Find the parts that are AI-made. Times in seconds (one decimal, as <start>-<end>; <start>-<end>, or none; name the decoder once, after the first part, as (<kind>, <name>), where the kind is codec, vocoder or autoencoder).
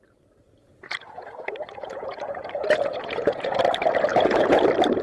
0.6-3.6 (vocoder, Vocos); 4.1-4.6